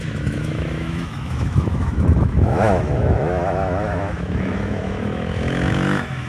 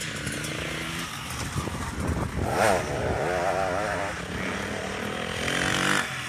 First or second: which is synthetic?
first